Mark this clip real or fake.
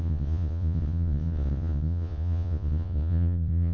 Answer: fake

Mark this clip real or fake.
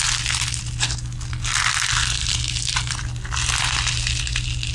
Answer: real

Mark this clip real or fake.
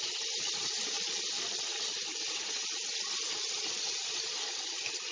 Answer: real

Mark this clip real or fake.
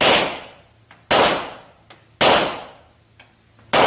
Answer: real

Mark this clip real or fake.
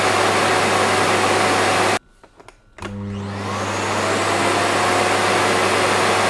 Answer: real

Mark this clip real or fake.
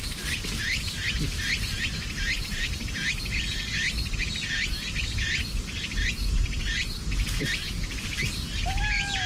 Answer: real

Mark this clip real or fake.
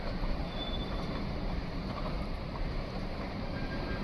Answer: fake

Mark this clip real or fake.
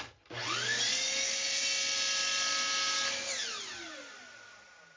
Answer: real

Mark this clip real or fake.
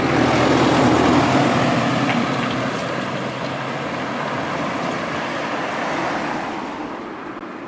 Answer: real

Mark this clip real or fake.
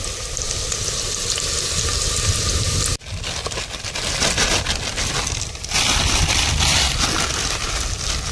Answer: real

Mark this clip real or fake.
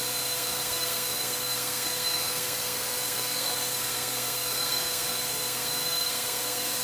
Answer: fake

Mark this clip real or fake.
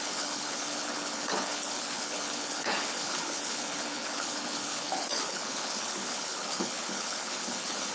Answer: fake